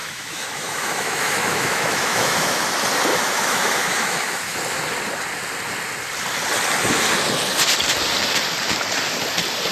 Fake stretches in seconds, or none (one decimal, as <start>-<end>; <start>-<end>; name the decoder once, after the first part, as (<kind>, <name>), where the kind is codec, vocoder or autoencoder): 0.0-2.7 (autoencoder, DAC-VAE); 3.1-4.6